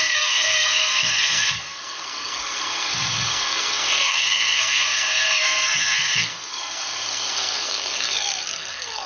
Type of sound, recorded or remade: remade